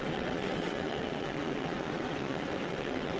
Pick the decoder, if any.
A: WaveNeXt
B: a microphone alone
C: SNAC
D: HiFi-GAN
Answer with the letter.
A